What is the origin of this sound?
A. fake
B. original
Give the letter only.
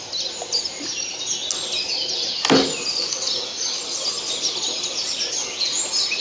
B